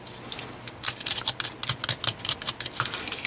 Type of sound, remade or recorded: recorded